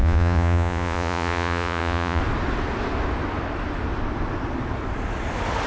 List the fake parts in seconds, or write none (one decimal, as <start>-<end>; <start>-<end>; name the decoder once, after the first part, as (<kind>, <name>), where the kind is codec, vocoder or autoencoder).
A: 0.0-2.2 (vocoder, Vocos)